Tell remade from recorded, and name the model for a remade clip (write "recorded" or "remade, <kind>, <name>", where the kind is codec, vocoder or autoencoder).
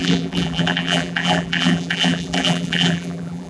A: remade, vocoder, BigVGAN v2